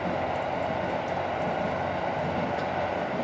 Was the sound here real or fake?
real